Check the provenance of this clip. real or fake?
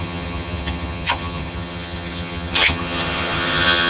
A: fake